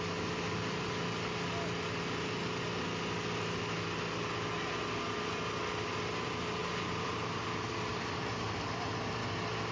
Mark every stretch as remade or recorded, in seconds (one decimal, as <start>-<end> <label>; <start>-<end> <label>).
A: 0.0-6.6 recorded; 6.6-8.9 remade; 8.9-9.7 recorded